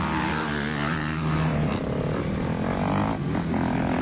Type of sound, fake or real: real